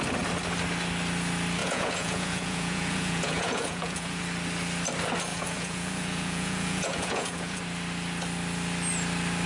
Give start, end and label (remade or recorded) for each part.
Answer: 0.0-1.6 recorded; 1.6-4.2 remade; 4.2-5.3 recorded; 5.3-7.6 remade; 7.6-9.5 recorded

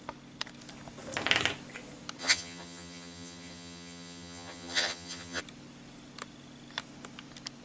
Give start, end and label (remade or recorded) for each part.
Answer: 0.0-2.2 recorded; 2.2-5.4 remade; 5.4-7.6 recorded

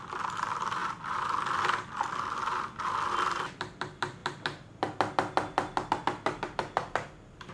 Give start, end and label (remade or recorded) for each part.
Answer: 0.0-0.8 remade; 0.8-3.5 recorded; 3.5-7.5 remade

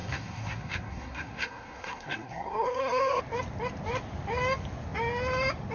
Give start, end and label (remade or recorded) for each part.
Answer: 0.0-3.2 remade; 3.2-5.7 recorded

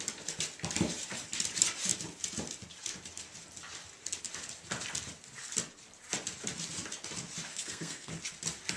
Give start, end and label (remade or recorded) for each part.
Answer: 0.0-7.5 recorded; 7.5-8.1 remade; 8.1-8.8 recorded